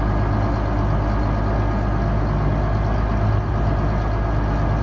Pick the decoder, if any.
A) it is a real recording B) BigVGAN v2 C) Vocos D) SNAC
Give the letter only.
A